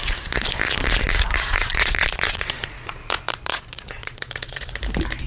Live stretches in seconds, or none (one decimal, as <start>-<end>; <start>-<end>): 0.0-1.5; 4.7-5.3